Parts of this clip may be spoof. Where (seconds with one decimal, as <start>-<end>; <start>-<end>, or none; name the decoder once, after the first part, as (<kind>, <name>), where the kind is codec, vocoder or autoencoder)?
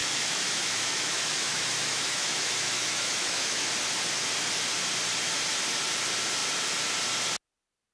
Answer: 0.0-3.7 (autoencoder, DAC-VAE)